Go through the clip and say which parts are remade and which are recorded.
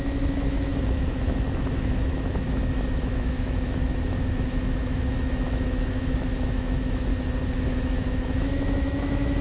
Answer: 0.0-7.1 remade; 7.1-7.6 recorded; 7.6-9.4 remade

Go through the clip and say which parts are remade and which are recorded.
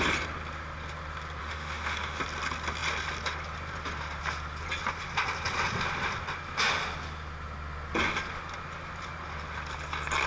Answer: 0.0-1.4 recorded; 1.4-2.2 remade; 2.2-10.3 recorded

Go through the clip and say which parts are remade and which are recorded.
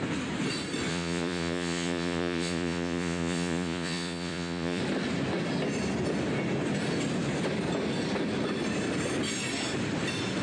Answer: 0.0-0.9 recorded; 0.9-4.8 remade; 4.8-10.4 recorded